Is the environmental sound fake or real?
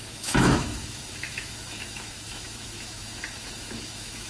fake